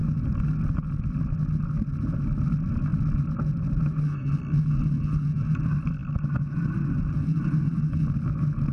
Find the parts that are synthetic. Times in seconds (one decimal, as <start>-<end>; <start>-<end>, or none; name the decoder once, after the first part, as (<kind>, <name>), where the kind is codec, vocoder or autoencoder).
none